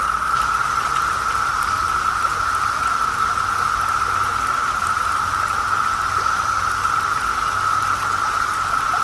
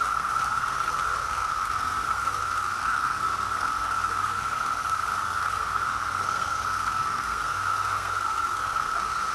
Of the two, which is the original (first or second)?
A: first